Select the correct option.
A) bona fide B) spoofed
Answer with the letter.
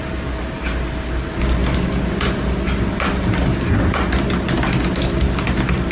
A